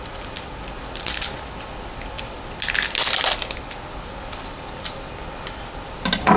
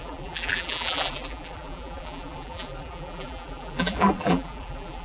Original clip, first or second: first